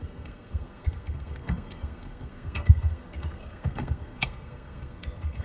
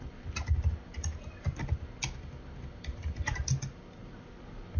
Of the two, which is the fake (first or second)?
first